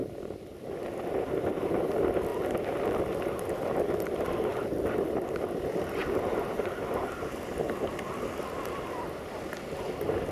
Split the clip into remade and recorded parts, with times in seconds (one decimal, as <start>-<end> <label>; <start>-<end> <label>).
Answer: 0.0-6.0 recorded; 6.0-7.7 remade; 7.7-10.3 recorded